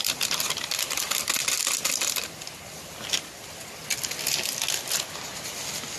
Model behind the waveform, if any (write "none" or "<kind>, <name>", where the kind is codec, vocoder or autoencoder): none